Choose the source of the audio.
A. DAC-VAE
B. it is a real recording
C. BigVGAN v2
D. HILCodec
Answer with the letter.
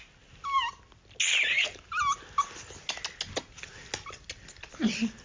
B